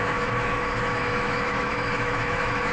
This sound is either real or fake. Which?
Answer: fake